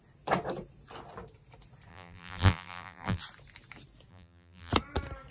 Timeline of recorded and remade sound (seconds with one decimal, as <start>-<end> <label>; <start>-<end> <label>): 0.0-1.9 recorded; 1.9-3.2 remade; 3.2-4.1 recorded; 4.1-4.7 remade; 4.7-5.3 recorded

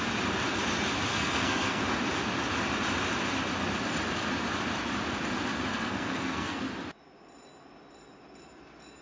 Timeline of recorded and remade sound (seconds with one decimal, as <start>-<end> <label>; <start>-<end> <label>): 0.0-1.1 recorded; 1.1-1.8 remade; 1.8-5.7 recorded; 5.7-6.6 remade; 6.6-9.0 recorded

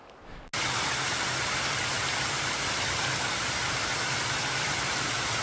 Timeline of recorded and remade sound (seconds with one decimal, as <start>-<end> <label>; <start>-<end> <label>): 0.0-5.4 recorded

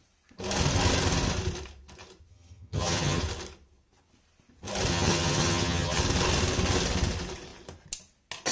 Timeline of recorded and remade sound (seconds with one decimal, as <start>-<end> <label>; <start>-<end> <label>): 0.0-2.3 recorded; 2.3-3.2 remade; 3.2-4.9 recorded; 4.9-6.0 remade; 6.0-8.5 recorded

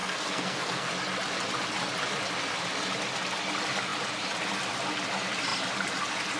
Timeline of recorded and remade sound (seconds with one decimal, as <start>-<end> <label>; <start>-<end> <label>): 0.0-0.9 remade; 0.9-6.4 recorded

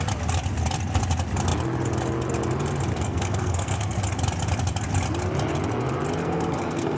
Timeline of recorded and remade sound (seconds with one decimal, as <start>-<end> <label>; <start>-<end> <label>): 0.0-2.9 recorded; 2.9-4.0 remade; 4.0-6.2 recorded; 6.2-7.0 remade